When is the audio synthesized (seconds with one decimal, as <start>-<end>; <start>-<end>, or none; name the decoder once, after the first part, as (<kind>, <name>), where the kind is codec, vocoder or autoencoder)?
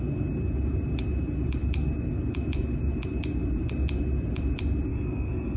4.9-5.6 (codec, SNAC)